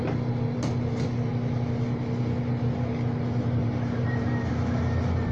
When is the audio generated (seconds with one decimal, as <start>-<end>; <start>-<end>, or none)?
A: none